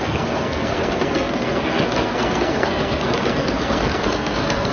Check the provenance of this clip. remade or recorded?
remade